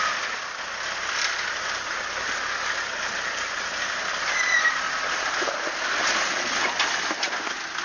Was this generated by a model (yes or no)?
no